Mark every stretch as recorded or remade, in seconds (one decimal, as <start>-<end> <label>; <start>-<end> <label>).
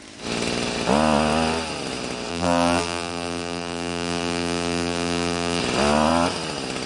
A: 0.0-2.3 recorded; 2.3-5.6 remade; 5.6-6.9 recorded